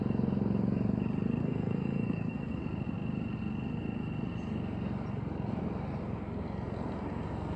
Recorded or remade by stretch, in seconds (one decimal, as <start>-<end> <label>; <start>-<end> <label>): 0.0-1.4 recorded; 1.4-2.6 remade; 2.6-7.6 recorded